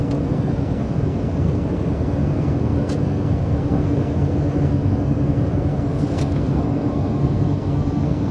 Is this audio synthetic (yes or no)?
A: yes